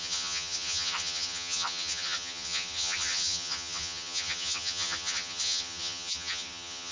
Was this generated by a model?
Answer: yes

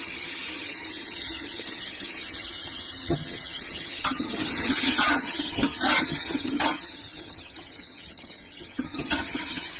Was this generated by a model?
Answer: yes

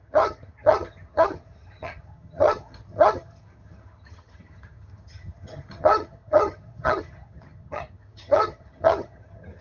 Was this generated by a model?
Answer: yes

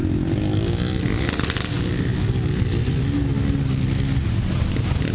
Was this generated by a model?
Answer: no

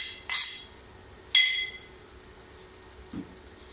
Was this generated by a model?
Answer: no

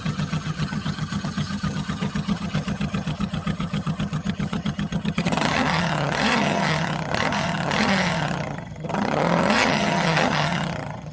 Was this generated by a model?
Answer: yes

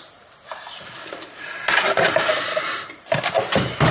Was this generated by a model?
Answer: no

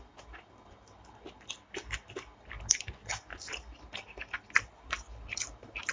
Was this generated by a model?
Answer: no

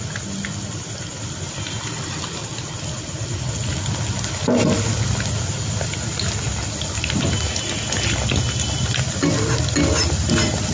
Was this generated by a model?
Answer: no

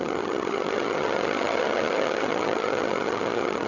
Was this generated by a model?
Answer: yes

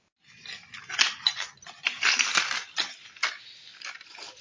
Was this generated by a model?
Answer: no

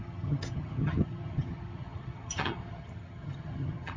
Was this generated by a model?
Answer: yes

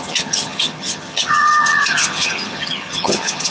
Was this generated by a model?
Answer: yes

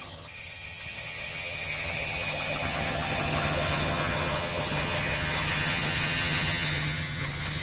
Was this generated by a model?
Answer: yes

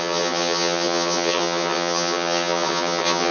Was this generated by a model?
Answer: yes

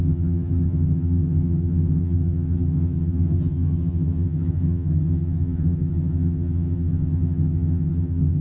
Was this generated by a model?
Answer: yes